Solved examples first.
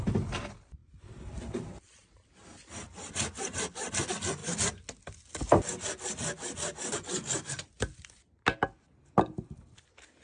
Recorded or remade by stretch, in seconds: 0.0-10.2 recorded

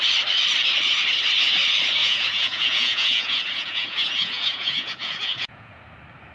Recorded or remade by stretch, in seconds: 0.0-2.0 recorded; 2.0-5.8 remade; 5.8-6.3 recorded